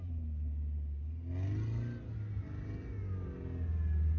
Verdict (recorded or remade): recorded